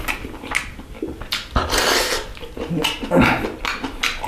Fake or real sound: real